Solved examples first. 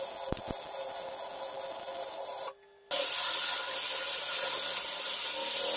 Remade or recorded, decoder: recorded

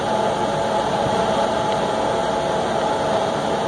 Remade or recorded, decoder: recorded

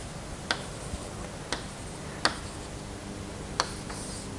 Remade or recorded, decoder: recorded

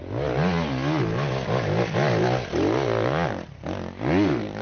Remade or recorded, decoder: recorded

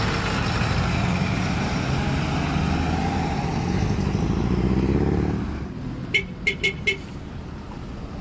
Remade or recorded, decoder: recorded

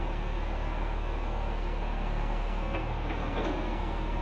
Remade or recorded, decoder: remade, codec, SNAC